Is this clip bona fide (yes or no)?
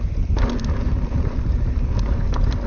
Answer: yes